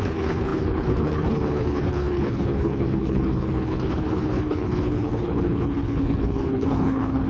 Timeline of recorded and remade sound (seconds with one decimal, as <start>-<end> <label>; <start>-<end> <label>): 0.0-7.3 remade